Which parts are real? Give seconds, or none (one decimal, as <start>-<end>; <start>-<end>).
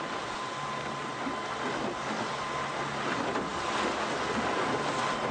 0.0-5.3